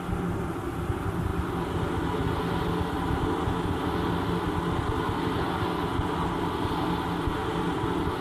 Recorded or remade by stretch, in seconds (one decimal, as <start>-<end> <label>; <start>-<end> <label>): 0.0-8.2 recorded